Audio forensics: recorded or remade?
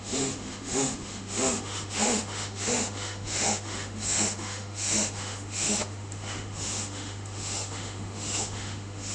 remade